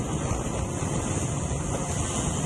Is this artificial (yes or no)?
no